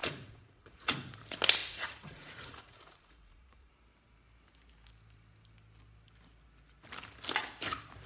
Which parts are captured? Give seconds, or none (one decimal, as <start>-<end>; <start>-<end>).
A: 1.1-1.6; 3.7-8.1